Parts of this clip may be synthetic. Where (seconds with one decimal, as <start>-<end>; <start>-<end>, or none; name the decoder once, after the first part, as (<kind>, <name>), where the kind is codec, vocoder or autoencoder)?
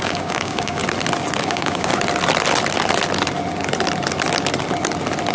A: 0.0-0.8 (codec, DAC); 1.4-1.9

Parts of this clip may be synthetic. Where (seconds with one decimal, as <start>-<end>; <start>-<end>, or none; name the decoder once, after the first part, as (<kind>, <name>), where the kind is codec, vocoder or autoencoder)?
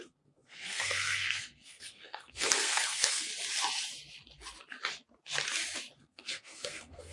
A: 0.0-3.3 (codec, SNAC); 6.0-7.1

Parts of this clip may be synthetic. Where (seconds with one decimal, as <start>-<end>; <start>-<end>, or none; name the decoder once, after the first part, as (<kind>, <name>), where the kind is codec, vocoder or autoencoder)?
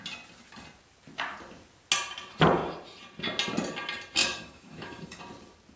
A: 4.2-5.2 (autoencoder, DAC-VAE)